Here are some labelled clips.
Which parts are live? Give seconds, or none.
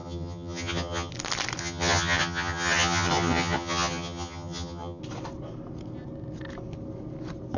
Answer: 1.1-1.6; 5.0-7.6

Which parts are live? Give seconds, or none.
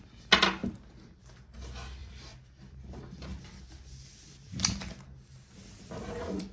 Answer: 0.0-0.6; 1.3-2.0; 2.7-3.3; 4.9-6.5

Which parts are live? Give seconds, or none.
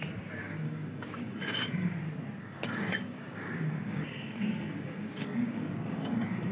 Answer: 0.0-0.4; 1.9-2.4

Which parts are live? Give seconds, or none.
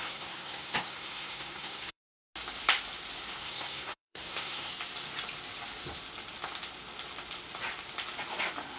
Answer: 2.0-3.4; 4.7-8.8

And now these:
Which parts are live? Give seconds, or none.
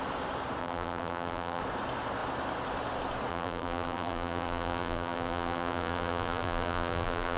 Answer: 0.0-0.6; 1.6-3.3